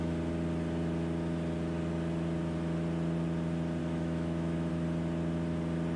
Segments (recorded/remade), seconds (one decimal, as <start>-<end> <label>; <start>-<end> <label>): 0.0-3.8 recorded; 3.8-4.7 remade; 4.7-6.0 recorded